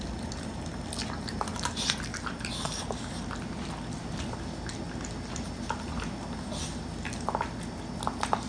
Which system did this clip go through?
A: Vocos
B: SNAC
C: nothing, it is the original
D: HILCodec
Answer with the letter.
C